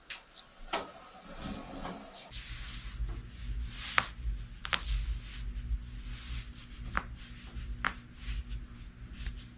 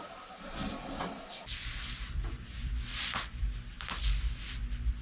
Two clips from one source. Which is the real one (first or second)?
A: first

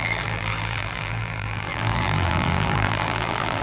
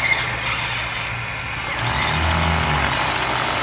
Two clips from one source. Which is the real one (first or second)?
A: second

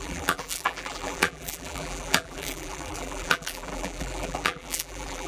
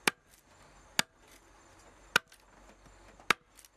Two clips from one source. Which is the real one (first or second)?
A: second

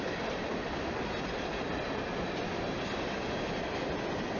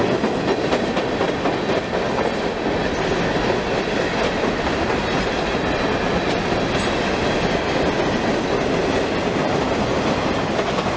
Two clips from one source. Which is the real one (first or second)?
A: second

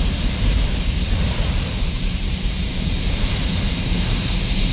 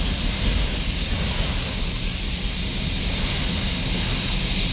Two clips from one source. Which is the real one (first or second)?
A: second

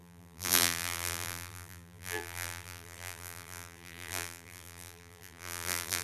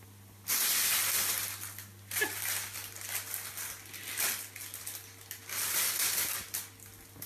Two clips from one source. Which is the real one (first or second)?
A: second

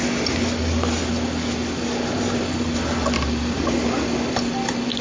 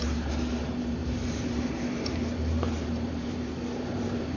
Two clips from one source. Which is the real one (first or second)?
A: first